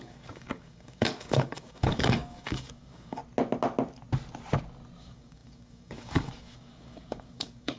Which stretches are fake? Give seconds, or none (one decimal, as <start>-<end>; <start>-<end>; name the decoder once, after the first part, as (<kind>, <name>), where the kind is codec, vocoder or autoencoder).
0.0-3.2 (codec, DAC); 5.0-7.8